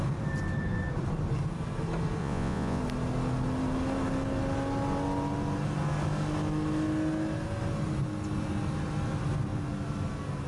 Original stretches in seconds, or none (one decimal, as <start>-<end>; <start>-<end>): 0.0-2.2; 2.8-10.5